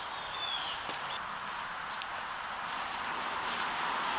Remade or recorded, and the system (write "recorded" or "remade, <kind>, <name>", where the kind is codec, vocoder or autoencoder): recorded